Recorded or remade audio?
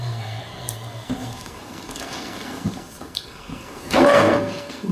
remade